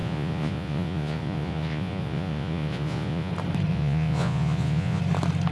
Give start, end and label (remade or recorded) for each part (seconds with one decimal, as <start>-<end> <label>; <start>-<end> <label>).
0.0-3.3 remade; 3.3-3.7 recorded; 3.7-5.0 remade; 5.0-5.5 recorded